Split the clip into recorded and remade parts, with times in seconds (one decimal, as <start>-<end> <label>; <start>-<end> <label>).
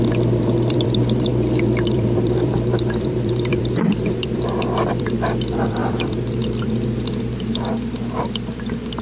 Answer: 0.0-9.0 remade